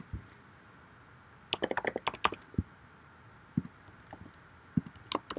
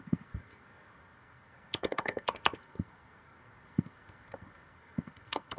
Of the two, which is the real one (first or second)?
first